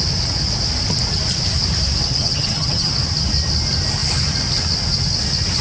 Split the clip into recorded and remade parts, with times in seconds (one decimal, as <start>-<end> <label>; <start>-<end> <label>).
0.0-2.1 recorded; 2.1-2.9 remade; 2.9-5.6 recorded